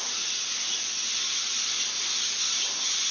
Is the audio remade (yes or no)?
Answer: no